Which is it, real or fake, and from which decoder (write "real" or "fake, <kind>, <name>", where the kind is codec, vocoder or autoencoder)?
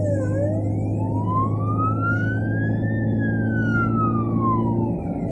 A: real